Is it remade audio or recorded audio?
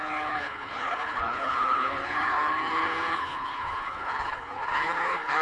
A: remade